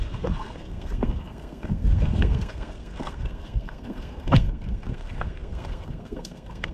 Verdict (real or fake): fake